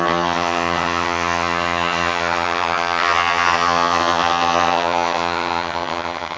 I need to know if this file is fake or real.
fake